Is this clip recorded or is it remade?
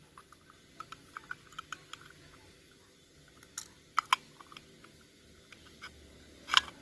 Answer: recorded